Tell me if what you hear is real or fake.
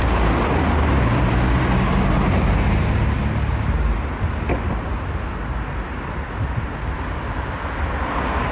real